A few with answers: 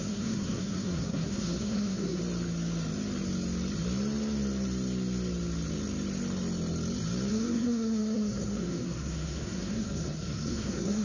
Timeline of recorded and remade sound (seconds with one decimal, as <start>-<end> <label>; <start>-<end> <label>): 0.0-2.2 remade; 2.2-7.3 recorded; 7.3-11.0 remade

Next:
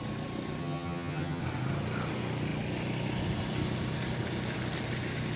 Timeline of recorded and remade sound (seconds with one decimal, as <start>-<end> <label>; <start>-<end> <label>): 0.0-0.6 recorded; 0.6-1.4 remade; 1.4-5.4 recorded

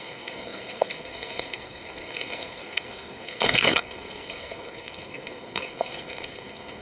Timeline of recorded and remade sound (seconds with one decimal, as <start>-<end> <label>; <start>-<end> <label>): 0.0-6.8 remade

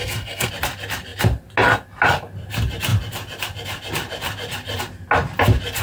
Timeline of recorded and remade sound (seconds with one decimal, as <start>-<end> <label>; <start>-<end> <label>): 0.0-0.5 remade; 0.5-5.8 recorded